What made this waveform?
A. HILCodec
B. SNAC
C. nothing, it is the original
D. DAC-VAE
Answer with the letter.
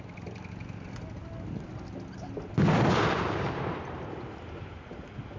C